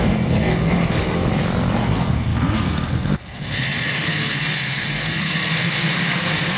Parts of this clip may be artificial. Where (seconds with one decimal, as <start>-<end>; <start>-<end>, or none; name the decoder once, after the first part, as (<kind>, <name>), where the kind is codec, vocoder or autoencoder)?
0.0-1.3 (codec, SNAC); 1.8-6.6